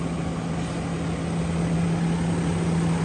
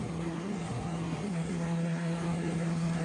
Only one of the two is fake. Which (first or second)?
second